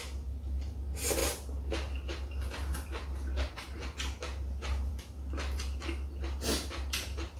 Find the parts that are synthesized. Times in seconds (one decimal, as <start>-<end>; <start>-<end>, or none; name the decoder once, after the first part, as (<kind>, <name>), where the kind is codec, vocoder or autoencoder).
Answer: none